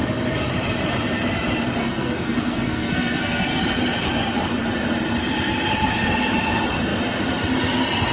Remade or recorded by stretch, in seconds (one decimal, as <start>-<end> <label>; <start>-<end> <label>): 0.0-1.8 recorded; 1.8-3.6 remade; 3.6-8.1 recorded

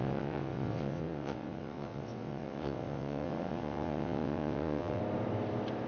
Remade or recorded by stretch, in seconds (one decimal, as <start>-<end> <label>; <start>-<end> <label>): 0.0-5.0 remade; 5.0-5.9 recorded

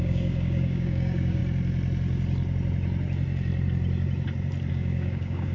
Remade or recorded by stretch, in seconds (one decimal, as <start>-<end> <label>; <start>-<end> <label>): 0.0-1.4 remade; 1.4-4.7 recorded; 4.7-5.5 remade

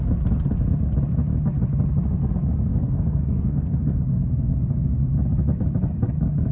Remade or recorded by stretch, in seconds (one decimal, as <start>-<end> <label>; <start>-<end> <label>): 0.0-2.7 recorded; 2.7-4.0 remade; 4.0-6.5 recorded